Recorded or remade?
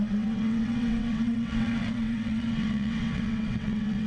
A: remade